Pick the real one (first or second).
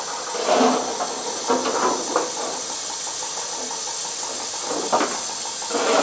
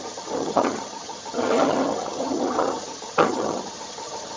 first